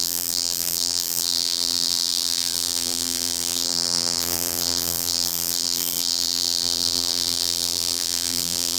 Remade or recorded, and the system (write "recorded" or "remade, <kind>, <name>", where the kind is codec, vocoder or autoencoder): remade, vocoder, BigVGAN v2